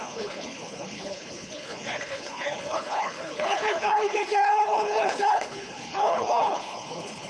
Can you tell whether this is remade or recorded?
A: remade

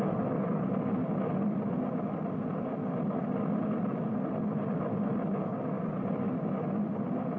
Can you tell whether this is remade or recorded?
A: recorded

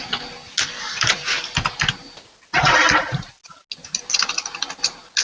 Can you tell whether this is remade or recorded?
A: recorded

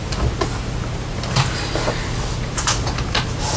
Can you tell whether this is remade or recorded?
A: recorded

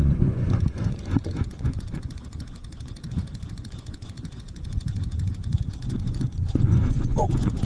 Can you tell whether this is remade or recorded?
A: remade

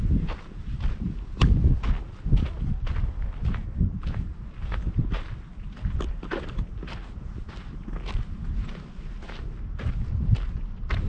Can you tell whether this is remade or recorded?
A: recorded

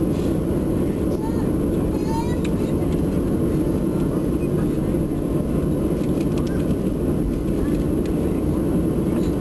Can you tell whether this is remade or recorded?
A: recorded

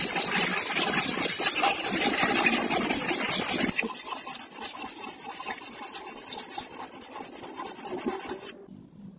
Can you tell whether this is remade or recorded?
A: recorded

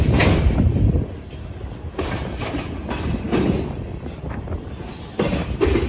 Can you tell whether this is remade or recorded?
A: recorded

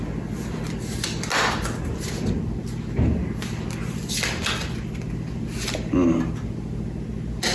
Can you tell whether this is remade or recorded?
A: recorded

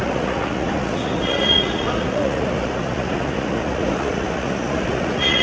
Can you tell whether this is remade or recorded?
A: remade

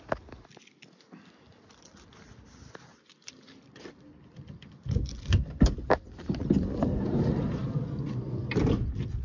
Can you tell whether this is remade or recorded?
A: recorded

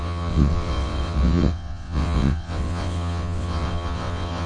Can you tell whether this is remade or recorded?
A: remade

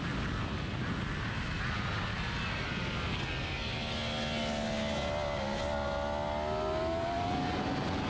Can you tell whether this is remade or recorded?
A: recorded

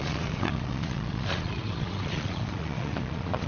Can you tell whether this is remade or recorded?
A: remade